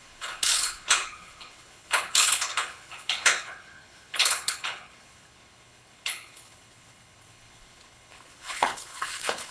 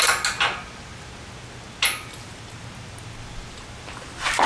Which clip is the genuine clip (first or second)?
second